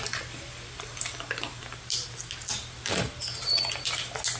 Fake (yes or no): no